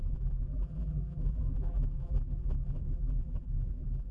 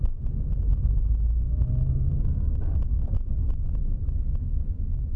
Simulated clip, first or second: first